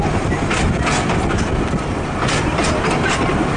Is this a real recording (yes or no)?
yes